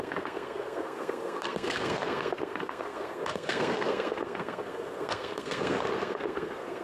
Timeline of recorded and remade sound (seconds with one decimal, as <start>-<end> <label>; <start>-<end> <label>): 0.0-6.8 remade